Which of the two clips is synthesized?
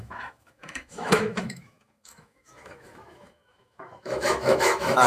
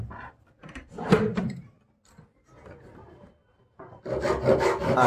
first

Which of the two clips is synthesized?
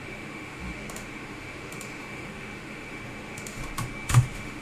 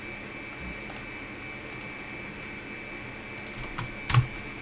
first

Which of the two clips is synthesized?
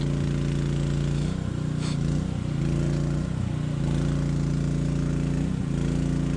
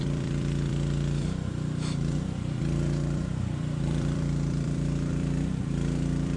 second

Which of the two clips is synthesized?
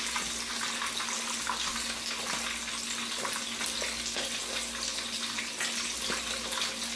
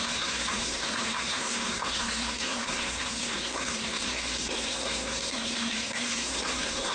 second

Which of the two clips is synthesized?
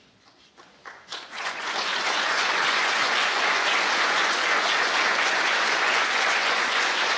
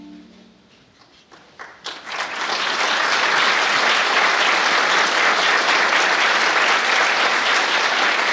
first